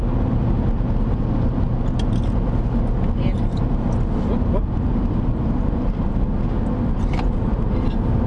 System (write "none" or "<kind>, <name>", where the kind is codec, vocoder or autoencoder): none